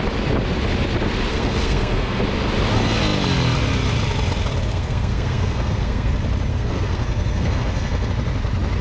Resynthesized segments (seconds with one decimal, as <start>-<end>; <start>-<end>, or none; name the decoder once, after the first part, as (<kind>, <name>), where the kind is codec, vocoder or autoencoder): 1.3-2.2 (codec, SNAC); 4.7-6.1; 6.5-8.1